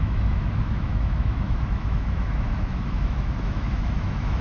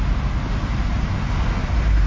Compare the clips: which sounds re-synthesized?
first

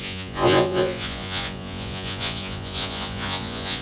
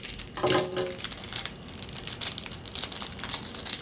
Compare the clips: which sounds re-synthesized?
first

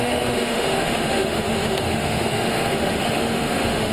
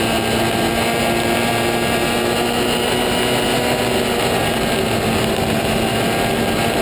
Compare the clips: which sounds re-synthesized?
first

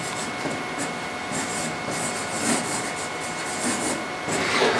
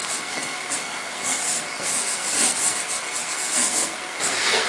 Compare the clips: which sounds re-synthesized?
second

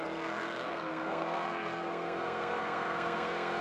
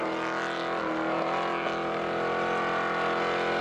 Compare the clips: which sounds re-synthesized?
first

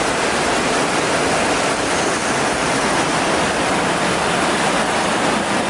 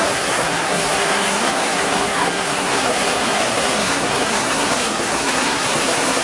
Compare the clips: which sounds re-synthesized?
second